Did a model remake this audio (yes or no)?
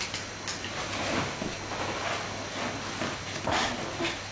no